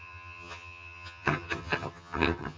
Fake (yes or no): yes